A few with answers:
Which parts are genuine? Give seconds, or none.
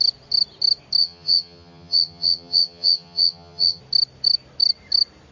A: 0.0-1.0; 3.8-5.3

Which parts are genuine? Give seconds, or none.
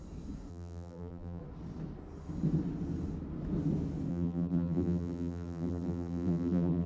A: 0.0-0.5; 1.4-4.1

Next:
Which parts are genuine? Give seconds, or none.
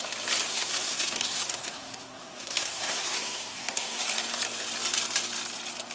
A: 0.0-0.5; 4.0-5.9